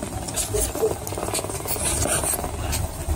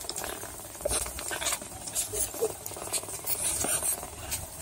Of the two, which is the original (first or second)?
first